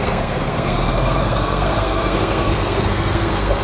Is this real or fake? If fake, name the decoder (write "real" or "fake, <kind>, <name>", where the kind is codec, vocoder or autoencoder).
fake, codec, SNAC